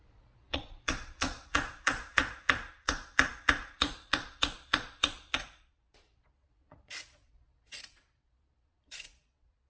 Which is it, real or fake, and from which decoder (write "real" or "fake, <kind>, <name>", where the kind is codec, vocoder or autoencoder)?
fake, vocoder, Vocos